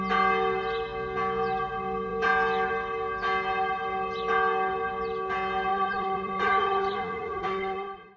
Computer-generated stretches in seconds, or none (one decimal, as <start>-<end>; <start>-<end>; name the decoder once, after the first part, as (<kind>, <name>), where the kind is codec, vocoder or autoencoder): 5.7-8.2 (vocoder, Vocos)